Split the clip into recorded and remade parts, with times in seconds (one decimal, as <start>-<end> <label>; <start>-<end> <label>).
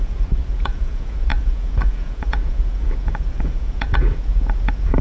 0.0-5.0 remade